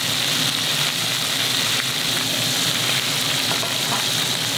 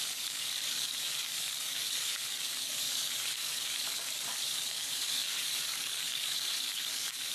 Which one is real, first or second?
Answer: first